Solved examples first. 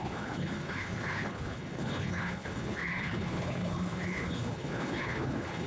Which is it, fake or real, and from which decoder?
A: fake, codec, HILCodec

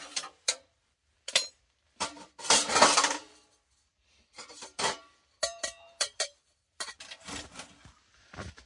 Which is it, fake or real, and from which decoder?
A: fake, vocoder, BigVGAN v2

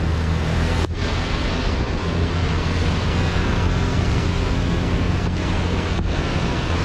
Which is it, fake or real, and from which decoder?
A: fake, codec, SNAC